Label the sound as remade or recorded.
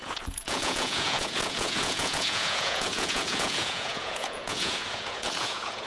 remade